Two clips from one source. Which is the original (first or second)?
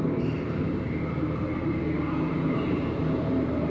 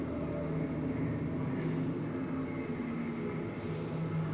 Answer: second